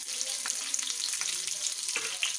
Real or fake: real